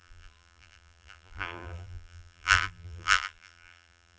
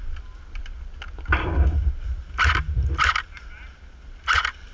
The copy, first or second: first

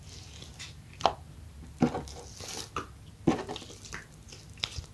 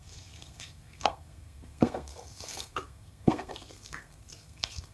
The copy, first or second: second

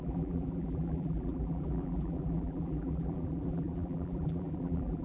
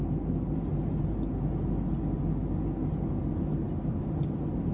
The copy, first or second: first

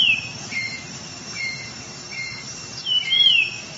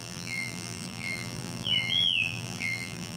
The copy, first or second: second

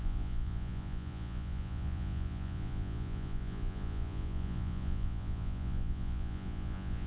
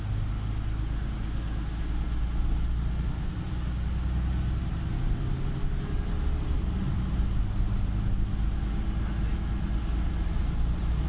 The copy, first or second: first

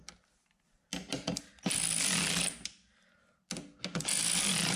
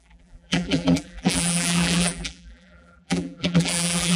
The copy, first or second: second